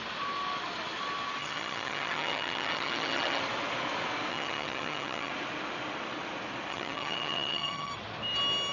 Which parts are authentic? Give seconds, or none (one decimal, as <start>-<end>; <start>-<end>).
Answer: 0.0-1.4; 3.4-4.3; 5.3-6.7; 7.9-8.7